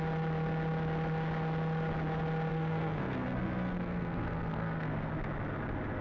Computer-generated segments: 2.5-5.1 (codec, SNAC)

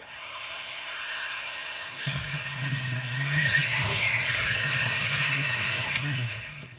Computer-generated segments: 0.0-6.8 (codec, SNAC)